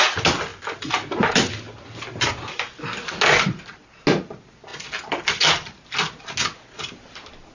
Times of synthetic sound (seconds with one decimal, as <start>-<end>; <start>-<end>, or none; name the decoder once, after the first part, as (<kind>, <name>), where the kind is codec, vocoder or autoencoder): none